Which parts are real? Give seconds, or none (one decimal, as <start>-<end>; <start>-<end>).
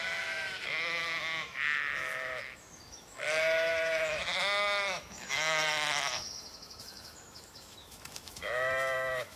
none